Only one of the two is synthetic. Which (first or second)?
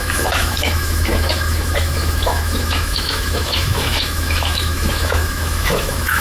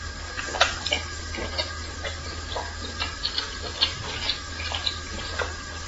first